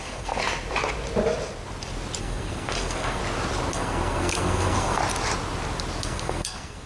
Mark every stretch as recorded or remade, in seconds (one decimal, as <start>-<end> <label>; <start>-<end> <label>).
0.0-0.4 remade; 0.4-2.2 recorded; 2.2-3.2 remade; 3.2-3.7 recorded; 3.7-5.0 remade; 5.0-6.0 recorded; 6.0-6.9 remade